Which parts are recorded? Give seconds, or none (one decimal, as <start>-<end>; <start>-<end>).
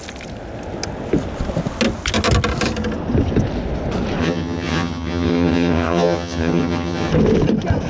0.0-4.2; 7.1-7.9